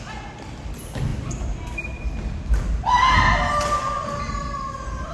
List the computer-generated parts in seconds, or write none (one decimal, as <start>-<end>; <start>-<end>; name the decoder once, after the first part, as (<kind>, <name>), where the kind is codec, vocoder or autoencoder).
none